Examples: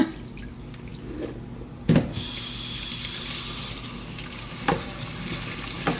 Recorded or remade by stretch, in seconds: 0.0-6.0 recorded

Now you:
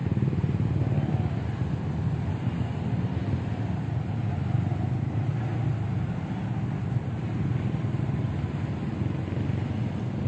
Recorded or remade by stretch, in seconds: 0.0-10.3 recorded